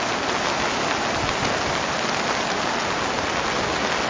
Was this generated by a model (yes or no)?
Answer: no